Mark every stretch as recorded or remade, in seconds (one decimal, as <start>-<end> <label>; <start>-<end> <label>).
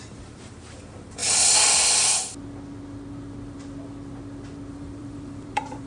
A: 0.0-1.2 remade; 1.2-4.7 recorded; 4.7-5.9 remade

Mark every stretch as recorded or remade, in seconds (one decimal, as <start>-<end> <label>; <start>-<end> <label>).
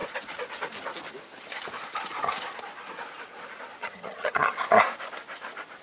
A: 0.0-3.8 recorded; 3.8-4.5 remade; 4.5-5.8 recorded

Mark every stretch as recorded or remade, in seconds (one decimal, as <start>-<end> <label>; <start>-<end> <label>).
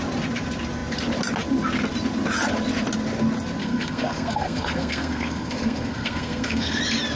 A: 0.0-3.6 recorded; 3.6-6.8 remade; 6.8-7.2 recorded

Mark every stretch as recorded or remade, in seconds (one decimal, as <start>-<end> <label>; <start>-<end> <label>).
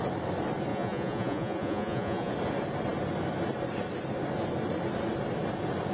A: 0.0-0.7 recorded; 0.7-2.3 remade; 2.3-5.9 recorded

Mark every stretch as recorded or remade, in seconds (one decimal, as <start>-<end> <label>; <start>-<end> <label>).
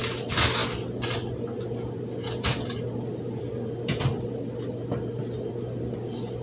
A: 0.0-6.4 recorded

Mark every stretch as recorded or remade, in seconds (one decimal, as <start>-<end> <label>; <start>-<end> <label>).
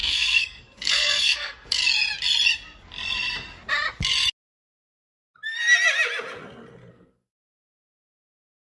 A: 0.0-1.8 remade; 1.8-6.9 recorded; 6.9-8.7 remade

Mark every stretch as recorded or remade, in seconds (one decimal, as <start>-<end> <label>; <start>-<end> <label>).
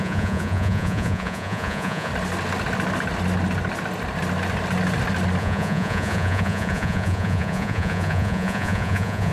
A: 0.0-2.1 remade; 2.1-5.4 recorded; 5.4-9.3 remade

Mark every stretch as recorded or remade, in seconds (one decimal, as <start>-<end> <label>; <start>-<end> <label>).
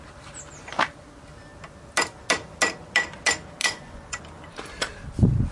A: 0.0-3.6 recorded; 3.6-4.2 remade; 4.2-5.5 recorded